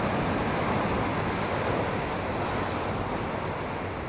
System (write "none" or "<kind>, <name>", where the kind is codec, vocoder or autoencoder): none